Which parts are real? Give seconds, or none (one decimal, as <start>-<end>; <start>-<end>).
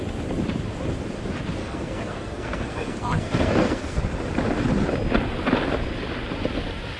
0.0-1.6; 4.0-7.0